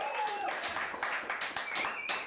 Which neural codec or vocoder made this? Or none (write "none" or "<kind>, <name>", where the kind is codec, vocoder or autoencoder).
none